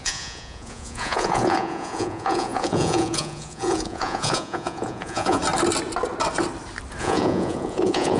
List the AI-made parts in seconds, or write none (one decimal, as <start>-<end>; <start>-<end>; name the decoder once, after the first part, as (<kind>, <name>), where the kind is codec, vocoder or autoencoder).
0.0-5.4 (vocoder, Vocos); 7.0-8.2